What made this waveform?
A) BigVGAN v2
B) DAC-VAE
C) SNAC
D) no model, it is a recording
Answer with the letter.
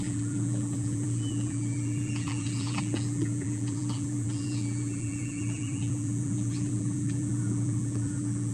A